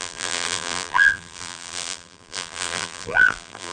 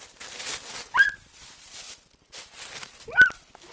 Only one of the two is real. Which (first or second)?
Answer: second